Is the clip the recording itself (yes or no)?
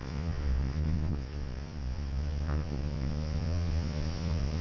no